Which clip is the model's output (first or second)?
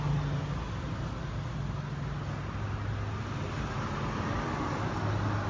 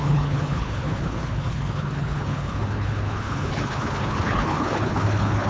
second